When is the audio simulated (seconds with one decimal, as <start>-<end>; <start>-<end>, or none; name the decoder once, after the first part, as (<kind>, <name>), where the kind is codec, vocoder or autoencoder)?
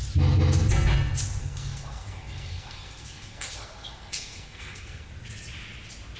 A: 1.4-5.1 (codec, SNAC)